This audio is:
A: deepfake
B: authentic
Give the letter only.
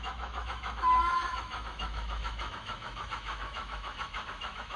A